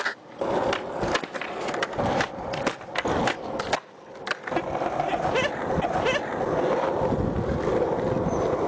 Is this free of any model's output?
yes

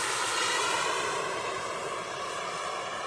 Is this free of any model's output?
no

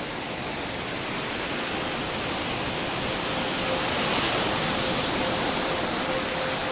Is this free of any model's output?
yes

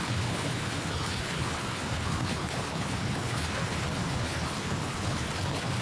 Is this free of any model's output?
no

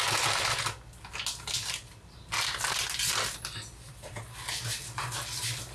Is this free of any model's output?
yes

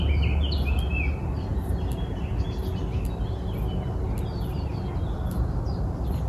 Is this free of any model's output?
yes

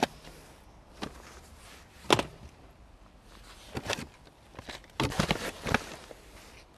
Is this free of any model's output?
yes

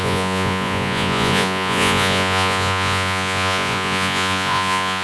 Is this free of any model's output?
no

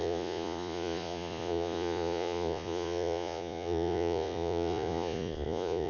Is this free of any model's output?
no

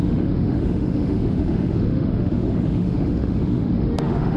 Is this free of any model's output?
no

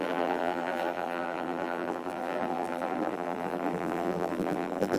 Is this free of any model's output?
no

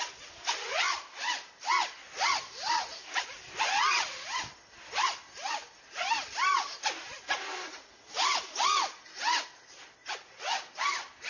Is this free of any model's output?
yes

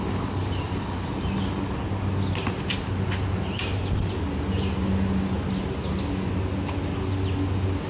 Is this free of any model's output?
yes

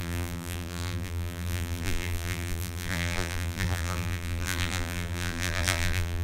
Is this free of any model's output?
no